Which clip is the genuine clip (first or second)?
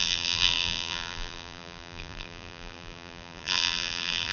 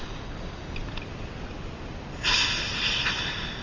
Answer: second